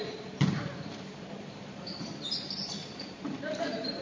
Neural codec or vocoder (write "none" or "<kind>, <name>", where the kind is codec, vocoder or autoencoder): vocoder, BigVGAN v2